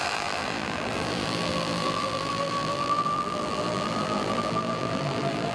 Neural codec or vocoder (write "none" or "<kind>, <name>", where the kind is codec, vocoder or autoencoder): vocoder, BigVGAN v2